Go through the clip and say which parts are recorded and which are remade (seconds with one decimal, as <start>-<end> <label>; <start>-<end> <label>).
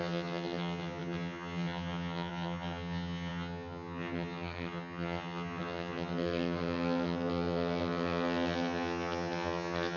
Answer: 0.0-10.0 remade